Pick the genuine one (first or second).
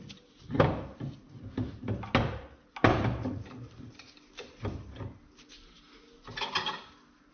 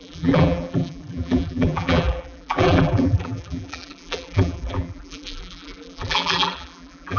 first